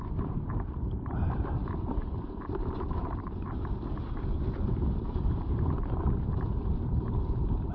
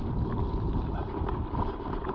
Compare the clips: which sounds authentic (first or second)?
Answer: second